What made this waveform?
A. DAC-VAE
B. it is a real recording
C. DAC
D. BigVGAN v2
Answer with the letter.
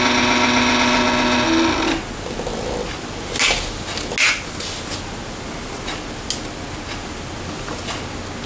B